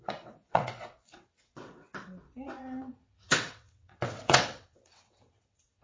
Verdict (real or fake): fake